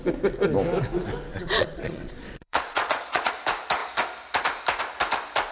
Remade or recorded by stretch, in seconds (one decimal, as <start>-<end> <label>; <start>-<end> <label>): 0.0-1.3 recorded; 1.3-3.3 remade; 3.3-5.5 recorded